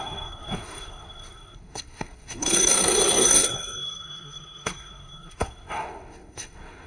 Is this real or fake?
fake